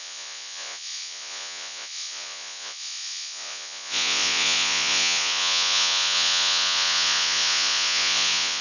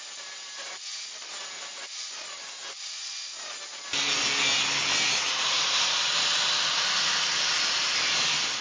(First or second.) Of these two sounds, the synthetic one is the first